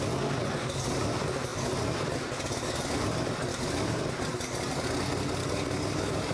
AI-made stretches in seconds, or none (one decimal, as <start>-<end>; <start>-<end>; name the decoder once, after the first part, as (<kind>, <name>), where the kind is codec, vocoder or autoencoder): 3.5-4.0 (codec, DAC); 5.4-6.3